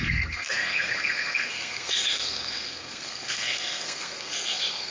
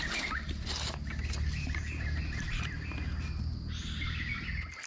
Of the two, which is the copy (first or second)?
first